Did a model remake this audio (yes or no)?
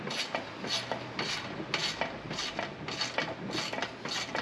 no